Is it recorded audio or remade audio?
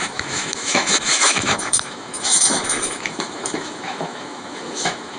remade